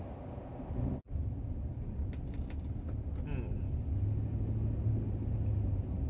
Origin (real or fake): real